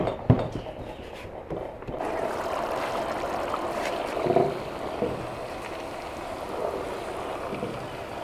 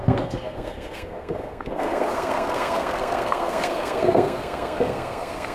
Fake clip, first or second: second